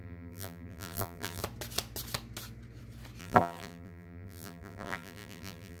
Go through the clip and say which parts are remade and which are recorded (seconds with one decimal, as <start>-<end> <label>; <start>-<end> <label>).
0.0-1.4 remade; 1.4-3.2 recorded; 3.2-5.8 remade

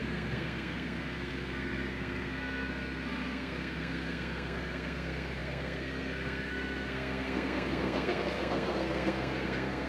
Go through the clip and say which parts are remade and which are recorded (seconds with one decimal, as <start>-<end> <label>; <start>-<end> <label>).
0.0-9.9 remade

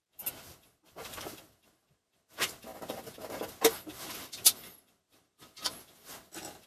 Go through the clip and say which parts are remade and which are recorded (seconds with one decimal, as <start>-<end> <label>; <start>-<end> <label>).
0.0-6.7 recorded

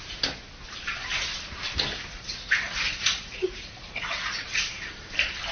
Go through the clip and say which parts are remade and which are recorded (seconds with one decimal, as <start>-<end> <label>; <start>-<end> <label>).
0.0-2.1 recorded; 2.1-4.9 remade; 4.9-5.5 recorded